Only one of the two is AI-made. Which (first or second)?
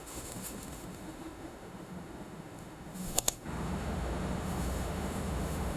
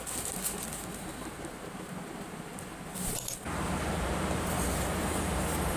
first